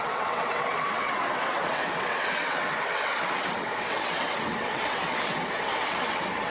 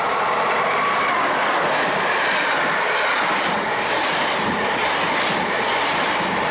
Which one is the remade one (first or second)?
first